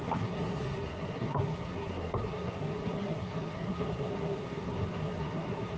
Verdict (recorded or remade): remade